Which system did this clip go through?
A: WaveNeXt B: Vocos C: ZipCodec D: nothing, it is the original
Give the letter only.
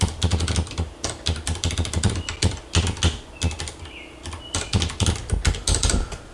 D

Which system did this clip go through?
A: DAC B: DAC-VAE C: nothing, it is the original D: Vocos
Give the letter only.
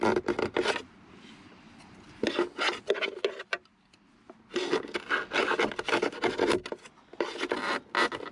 C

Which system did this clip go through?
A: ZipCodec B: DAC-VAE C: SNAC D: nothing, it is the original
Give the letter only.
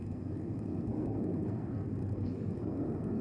C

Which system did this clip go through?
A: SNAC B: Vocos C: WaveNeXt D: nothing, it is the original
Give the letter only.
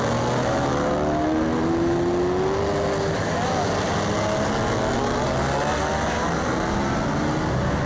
D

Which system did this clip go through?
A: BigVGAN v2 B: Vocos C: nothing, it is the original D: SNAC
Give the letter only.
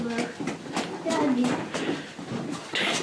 C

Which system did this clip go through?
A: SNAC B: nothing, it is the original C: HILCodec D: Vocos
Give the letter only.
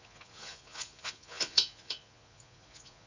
D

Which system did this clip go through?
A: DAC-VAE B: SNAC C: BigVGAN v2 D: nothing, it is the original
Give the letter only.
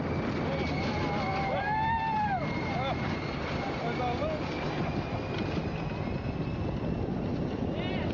D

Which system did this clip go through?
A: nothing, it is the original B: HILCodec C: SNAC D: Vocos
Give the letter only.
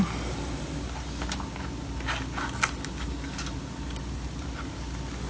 A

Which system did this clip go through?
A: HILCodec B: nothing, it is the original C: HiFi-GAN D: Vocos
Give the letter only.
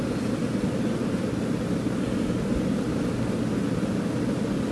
B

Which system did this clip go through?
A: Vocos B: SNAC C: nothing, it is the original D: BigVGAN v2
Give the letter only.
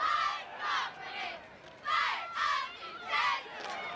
C